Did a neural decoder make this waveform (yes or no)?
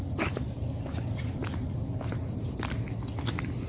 no